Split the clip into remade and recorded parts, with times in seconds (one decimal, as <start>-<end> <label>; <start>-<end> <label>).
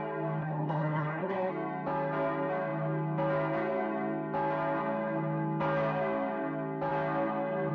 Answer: 0.0-0.4 recorded; 0.4-1.5 remade; 1.5-7.7 recorded